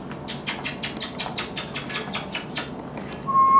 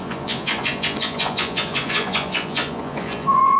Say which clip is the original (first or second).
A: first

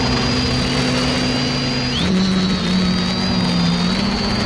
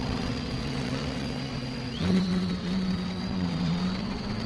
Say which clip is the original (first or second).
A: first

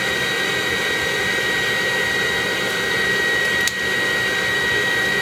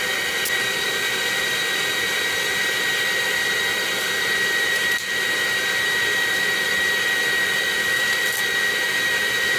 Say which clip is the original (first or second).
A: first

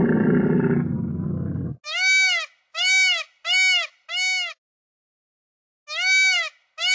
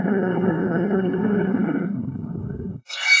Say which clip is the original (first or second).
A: first